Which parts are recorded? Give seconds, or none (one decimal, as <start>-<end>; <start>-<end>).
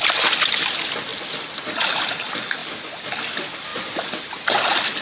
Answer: 0.0-3.7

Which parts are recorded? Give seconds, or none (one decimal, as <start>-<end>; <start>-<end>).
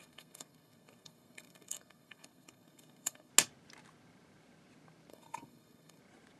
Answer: 3.3-5.1; 6.0-6.4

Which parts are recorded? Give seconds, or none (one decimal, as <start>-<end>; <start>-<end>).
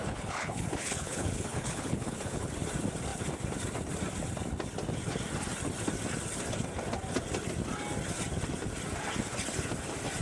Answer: 2.5-10.2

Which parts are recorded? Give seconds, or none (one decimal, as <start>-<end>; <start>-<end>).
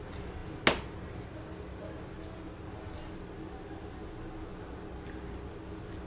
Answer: 0.0-6.1